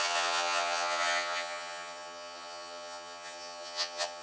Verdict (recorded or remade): remade